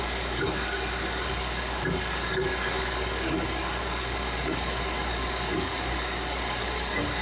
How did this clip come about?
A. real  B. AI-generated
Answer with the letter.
B